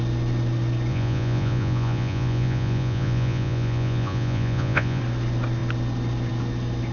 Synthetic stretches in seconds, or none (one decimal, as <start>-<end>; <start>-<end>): 0.9-5.0